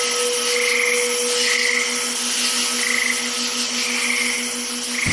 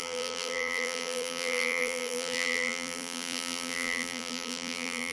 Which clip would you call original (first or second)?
first